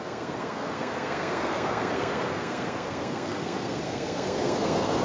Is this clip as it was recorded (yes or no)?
no